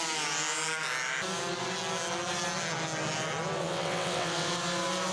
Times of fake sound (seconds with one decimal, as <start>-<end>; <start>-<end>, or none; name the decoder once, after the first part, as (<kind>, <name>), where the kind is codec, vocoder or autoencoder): 3.6-4.5 (vocoder, WaveNeXt)